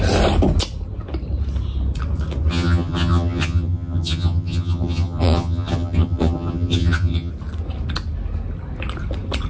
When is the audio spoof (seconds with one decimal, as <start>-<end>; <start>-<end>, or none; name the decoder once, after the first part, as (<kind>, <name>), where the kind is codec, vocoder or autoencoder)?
2.5-7.3 (vocoder, HiFi-GAN)

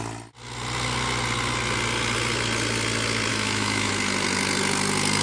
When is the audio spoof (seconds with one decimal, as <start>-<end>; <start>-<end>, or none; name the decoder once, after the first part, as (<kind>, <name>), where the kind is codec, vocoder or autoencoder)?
3.3-3.9 (autoencoder, DAC-VAE)